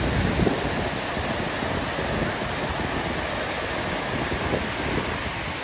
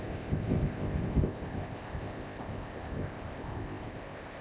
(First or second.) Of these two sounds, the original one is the first